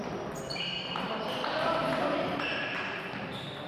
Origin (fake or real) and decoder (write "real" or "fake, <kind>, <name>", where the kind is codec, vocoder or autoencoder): fake, vocoder, BigVGAN v2